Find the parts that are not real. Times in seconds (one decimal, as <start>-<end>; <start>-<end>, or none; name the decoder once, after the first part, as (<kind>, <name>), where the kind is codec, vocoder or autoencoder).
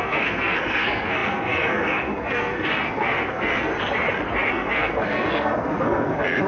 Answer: 0.0-3.7 (codec, SNAC); 4.5-6.5